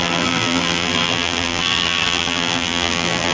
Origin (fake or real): fake